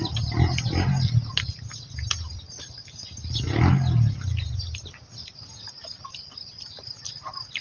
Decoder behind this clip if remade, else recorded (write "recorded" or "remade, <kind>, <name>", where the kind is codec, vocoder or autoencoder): recorded